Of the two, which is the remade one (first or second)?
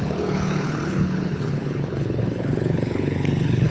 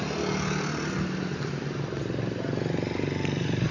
first